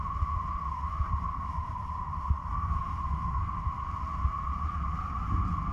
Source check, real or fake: real